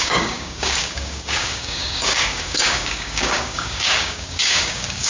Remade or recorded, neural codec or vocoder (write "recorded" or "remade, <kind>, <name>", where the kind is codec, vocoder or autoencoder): remade, codec, DAC